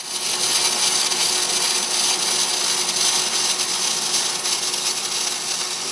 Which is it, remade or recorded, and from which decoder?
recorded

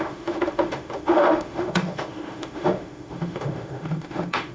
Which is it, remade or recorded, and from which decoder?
remade, autoencoder, DAC-VAE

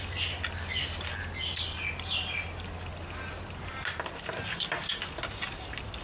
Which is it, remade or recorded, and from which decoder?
recorded